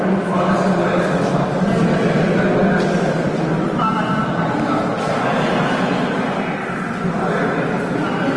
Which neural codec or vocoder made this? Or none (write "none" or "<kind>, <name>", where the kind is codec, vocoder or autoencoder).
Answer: none